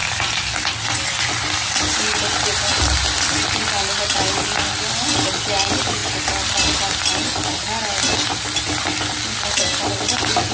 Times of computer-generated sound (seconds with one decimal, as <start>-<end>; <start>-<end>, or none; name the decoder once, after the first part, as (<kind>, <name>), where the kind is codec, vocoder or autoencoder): none